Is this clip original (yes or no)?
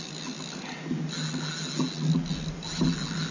yes